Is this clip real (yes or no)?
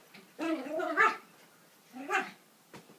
yes